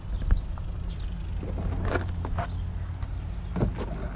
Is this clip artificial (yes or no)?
no